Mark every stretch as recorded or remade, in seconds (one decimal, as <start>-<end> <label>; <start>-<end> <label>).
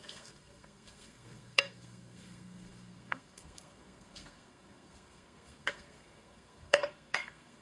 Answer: 0.0-7.6 remade